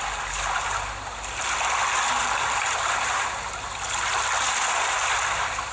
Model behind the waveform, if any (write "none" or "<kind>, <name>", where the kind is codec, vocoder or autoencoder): none